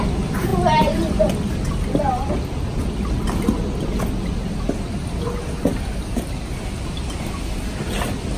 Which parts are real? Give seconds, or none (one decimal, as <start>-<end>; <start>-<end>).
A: 0.0-8.4